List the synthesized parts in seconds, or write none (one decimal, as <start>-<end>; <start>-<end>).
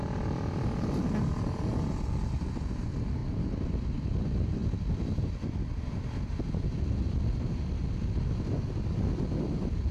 none